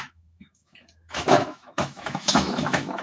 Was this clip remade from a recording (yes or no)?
yes